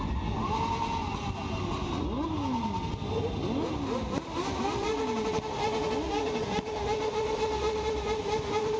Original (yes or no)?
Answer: yes